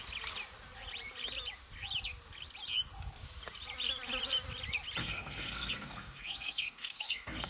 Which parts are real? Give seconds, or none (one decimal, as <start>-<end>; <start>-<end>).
0.0-5.0